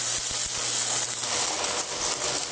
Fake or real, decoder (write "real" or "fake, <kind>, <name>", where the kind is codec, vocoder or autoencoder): real